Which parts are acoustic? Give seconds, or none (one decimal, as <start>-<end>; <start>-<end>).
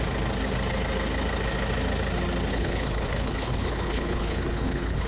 0.0-2.5